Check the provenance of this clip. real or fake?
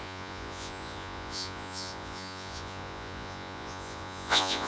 fake